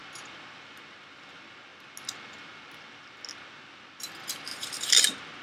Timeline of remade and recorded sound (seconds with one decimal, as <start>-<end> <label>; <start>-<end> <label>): 0.0-5.4 recorded